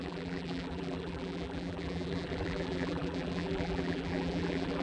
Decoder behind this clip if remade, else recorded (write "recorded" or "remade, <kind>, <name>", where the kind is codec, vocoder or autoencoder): remade, vocoder, BigVGAN v2